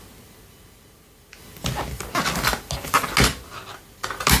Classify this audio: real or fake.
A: real